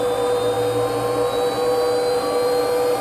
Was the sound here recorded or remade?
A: recorded